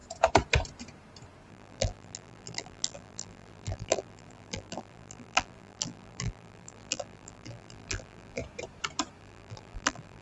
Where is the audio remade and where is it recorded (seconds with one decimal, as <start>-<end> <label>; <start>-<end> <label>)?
0.0-1.5 recorded; 1.5-8.4 remade; 8.4-9.2 recorded; 9.2-10.2 remade